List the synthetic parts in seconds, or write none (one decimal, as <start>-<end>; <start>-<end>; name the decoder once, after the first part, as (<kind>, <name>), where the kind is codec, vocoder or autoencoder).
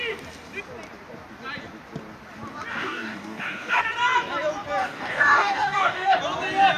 2.7-3.8 (codec, DAC); 4.8-6.2